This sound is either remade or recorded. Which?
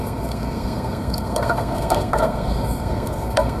remade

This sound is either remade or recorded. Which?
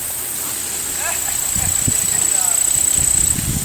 recorded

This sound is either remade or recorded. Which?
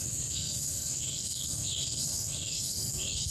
remade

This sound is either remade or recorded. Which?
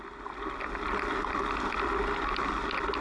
recorded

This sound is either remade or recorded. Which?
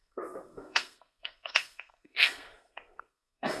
remade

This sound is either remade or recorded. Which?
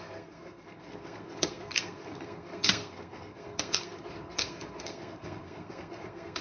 remade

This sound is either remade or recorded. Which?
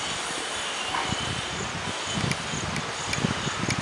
recorded